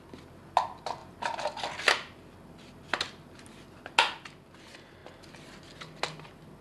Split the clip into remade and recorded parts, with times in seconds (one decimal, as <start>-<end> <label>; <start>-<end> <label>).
0.0-1.0 recorded; 1.0-1.8 remade; 1.8-6.6 recorded